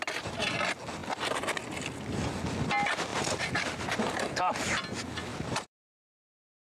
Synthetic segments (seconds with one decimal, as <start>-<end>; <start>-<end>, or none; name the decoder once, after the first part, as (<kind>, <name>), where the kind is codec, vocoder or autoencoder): 3.1-4.4 (vocoder, BigVGAN v2); 5.3-5.9